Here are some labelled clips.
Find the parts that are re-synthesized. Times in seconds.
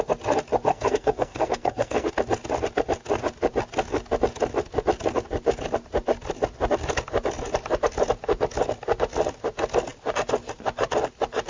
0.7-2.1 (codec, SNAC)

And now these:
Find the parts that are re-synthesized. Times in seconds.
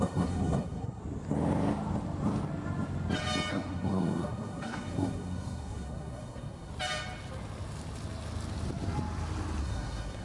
0.0-1.0 (codec, SNAC); 3.5-6.7; 9.6-10.2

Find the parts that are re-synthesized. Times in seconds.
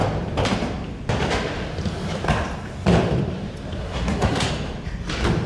3.8-4.5 (codec, SNAC)